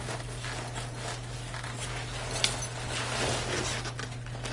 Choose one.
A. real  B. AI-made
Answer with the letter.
A